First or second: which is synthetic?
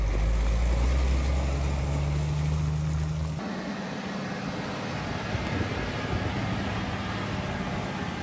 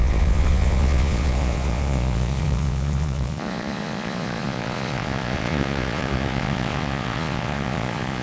second